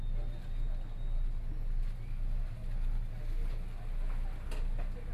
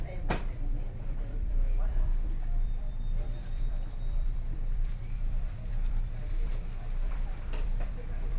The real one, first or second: first